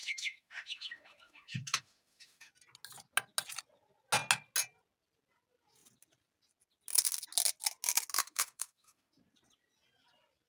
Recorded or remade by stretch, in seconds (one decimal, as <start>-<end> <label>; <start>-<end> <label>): 0.0-2.5 remade; 2.5-8.2 recorded; 8.2-9.1 remade; 9.1-10.5 recorded

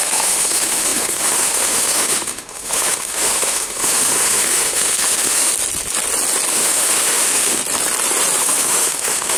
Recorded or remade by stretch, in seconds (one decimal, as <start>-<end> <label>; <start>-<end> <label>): 0.0-5.5 remade; 5.5-6.5 recorded; 6.5-7.6 remade; 7.6-8.4 recorded; 8.4-9.4 remade

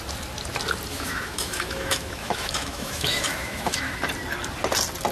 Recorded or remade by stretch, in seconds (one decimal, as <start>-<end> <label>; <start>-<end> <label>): 0.0-0.9 recorded; 0.9-4.0 remade; 4.0-5.1 recorded

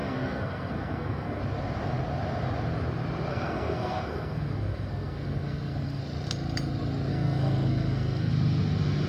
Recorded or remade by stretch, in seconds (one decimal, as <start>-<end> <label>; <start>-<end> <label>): 0.0-1.4 remade; 1.4-3.3 recorded; 3.3-6.0 remade; 6.0-7.1 recorded; 7.1-8.3 remade; 8.3-9.1 recorded

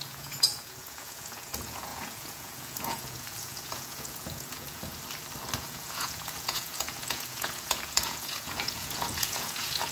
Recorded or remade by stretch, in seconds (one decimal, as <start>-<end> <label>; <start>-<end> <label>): 0.0-4.9 remade; 4.9-5.6 recorded; 5.6-9.9 remade

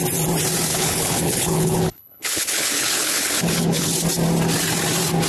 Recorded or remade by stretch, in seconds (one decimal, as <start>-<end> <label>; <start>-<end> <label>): 0.0-0.7 recorded; 0.7-3.9 remade; 3.9-5.3 recorded